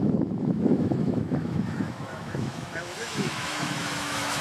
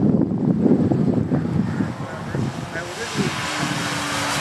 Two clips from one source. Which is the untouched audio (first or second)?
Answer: second